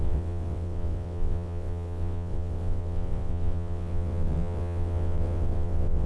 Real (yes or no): no